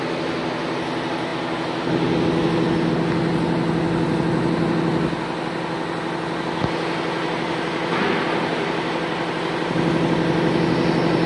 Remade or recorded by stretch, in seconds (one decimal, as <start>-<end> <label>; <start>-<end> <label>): 0.0-11.3 recorded